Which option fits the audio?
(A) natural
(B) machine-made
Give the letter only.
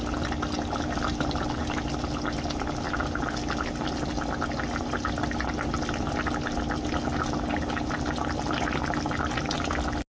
A